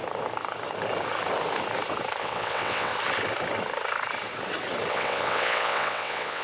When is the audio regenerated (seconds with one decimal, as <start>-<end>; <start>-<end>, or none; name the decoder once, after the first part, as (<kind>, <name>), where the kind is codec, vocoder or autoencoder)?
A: 2.2-2.9 (vocoder, WaveNeXt); 4.9-6.4